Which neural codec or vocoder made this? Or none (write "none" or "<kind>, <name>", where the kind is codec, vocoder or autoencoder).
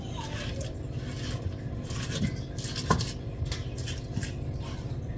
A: none